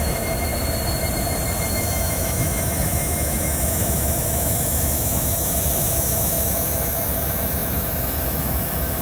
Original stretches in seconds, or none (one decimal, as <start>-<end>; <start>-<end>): 0.5-1.7